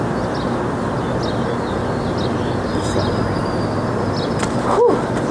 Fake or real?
real